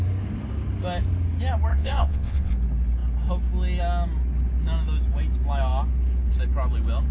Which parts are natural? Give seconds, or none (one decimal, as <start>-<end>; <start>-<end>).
0.0-1.7; 2.5-7.1